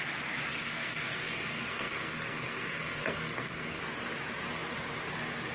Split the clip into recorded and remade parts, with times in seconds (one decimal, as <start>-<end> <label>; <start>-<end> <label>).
0.0-0.5 recorded; 0.5-3.8 remade; 3.8-5.5 recorded